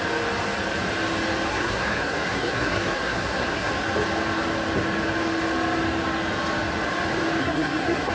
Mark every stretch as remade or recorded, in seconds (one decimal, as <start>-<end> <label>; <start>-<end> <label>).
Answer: 0.0-1.5 recorded; 1.5-3.7 remade; 3.7-7.4 recorded; 7.4-8.1 remade